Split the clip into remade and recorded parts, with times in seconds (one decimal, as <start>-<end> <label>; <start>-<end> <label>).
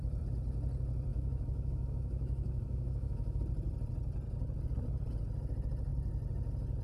0.0-1.1 recorded; 1.1-3.4 remade; 3.4-6.8 recorded